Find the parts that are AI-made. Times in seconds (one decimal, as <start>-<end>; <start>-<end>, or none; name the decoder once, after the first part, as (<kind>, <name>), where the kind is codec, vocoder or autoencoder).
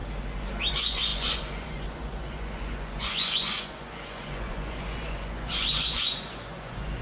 0.7-7.0 (vocoder, Vocos)